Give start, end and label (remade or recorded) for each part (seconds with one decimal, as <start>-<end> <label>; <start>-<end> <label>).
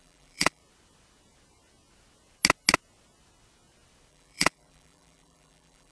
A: 0.0-0.6 remade; 0.6-4.1 recorded; 4.1-5.9 remade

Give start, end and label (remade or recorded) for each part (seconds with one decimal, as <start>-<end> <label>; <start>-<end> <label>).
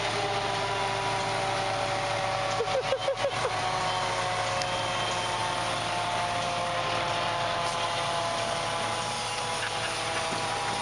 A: 0.0-3.0 recorded; 3.0-3.8 remade; 3.8-10.8 recorded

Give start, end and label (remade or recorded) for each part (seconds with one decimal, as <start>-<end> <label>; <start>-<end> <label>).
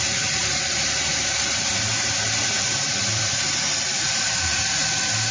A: 0.0-0.4 recorded; 0.4-1.7 remade; 1.7-2.4 recorded; 2.4-4.8 remade; 4.8-5.3 recorded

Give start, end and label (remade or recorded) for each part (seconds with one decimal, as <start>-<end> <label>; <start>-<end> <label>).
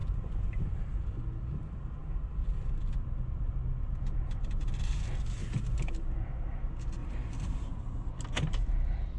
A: 0.0-0.6 remade; 0.6-5.4 recorded; 5.4-5.9 remade; 5.9-7.0 recorded; 7.0-7.7 remade; 7.7-9.2 recorded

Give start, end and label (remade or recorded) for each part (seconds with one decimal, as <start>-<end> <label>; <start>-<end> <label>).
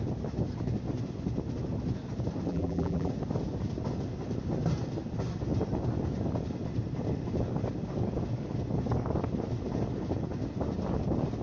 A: 0.0-2.5 recorded; 2.5-3.1 remade; 3.1-11.4 recorded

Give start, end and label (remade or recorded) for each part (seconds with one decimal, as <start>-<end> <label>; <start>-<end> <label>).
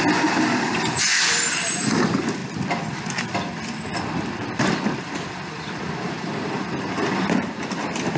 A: 0.0-8.2 remade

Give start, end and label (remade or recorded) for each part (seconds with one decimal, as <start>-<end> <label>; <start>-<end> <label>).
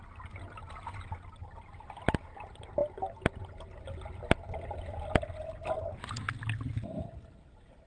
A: 0.0-7.9 recorded